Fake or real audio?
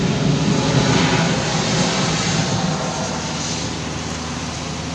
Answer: real